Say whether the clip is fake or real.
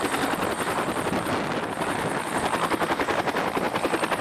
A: real